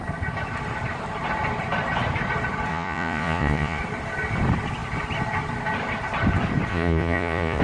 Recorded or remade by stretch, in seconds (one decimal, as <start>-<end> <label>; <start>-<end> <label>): 0.0-2.7 recorded; 2.7-3.8 remade; 3.8-6.7 recorded; 6.7-7.6 remade